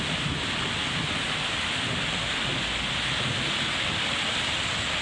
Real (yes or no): yes